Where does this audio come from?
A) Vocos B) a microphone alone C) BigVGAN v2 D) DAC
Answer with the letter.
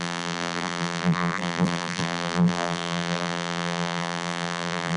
C